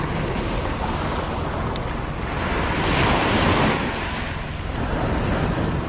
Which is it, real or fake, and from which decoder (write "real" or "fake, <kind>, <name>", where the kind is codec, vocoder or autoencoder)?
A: real